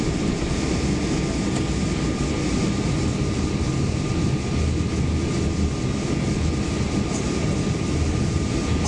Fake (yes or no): no